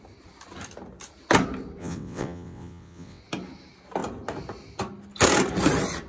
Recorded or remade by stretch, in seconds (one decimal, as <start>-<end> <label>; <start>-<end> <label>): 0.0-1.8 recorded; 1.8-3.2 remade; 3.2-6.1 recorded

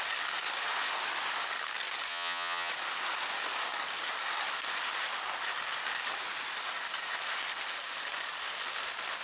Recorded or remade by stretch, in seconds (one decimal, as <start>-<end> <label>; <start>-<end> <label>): 0.0-2.1 recorded; 2.1-2.7 remade; 2.7-9.2 recorded

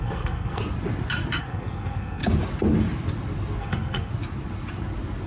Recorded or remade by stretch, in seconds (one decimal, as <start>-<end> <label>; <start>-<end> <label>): 0.0-0.6 remade; 0.6-1.4 recorded; 1.4-2.2 remade; 2.2-3.6 recorded; 3.6-4.1 remade; 4.1-5.3 recorded

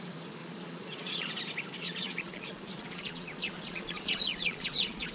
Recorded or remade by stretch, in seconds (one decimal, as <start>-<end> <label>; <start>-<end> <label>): 0.0-0.4 recorded; 0.4-1.3 remade; 1.3-1.8 recorded; 1.8-5.1 remade

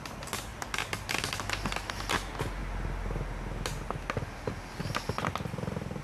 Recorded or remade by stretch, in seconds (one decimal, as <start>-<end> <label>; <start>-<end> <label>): 0.0-6.0 recorded